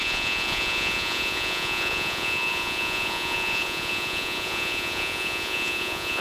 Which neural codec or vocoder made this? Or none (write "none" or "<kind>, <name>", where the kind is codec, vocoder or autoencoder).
vocoder, Vocos